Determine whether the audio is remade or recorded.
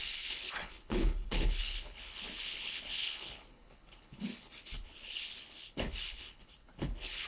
remade